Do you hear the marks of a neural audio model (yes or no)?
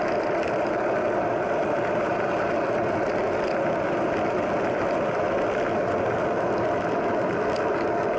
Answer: no